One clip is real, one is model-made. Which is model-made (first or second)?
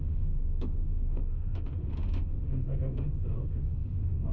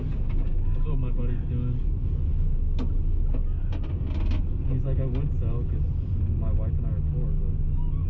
first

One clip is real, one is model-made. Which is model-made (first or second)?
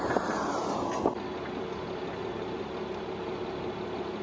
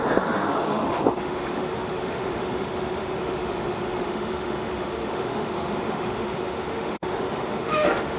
second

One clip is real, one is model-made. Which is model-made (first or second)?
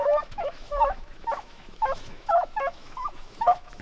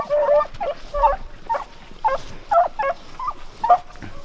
first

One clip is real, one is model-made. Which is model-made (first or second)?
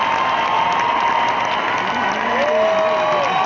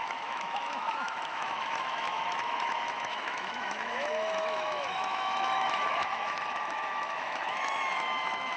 second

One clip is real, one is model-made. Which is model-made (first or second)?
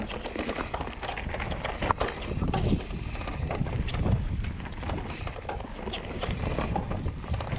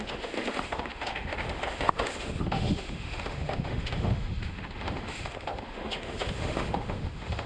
second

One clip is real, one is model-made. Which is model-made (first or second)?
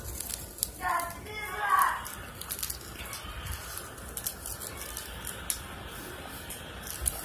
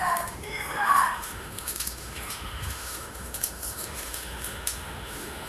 second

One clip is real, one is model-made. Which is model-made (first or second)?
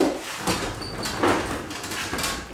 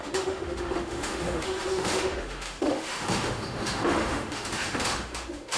second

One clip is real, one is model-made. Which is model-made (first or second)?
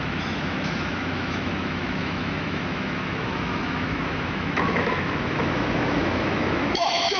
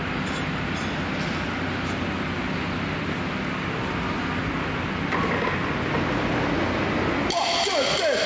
first